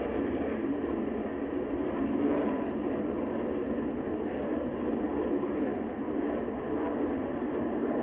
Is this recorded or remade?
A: recorded